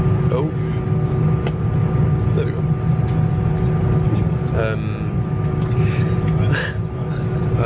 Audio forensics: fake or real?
real